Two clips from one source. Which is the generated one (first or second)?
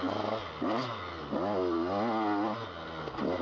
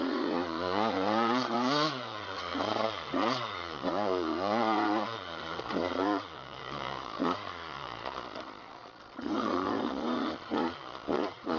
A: second